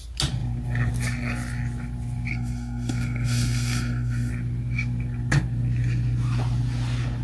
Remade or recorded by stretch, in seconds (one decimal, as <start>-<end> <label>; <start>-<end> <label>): 0.0-2.3 recorded; 2.3-4.3 remade; 4.3-7.2 recorded